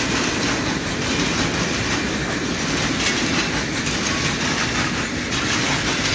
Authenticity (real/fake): real